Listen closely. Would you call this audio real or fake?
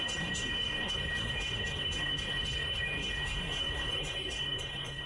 fake